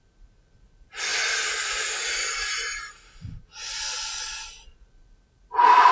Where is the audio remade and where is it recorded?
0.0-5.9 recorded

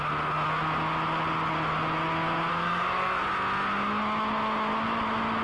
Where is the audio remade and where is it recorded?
0.0-2.5 recorded; 2.5-3.3 remade; 3.3-5.4 recorded

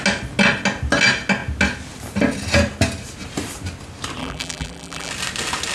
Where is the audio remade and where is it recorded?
0.0-4.2 recorded; 4.2-5.1 remade; 5.1-5.7 recorded

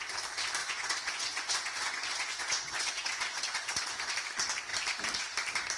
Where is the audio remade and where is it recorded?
0.0-0.6 recorded; 0.6-4.1 remade; 4.1-5.8 recorded